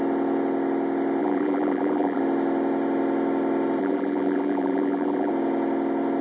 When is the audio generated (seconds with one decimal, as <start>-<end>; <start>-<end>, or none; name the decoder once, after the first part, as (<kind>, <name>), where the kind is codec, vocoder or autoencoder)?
1.2-2.2 (vocoder, BigVGAN v2); 3.8-5.3